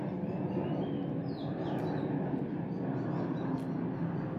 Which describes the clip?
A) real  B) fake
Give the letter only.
A